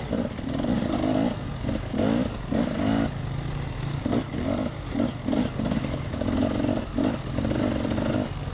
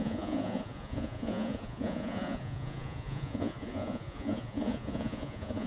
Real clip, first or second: first